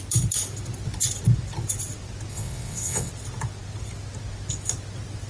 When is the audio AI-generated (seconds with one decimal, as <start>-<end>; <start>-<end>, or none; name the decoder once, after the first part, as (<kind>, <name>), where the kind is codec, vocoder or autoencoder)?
2.3-3.1 (vocoder, WaveNeXt)